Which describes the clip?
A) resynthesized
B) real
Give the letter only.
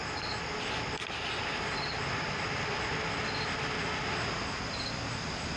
B